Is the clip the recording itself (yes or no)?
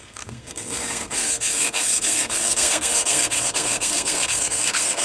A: no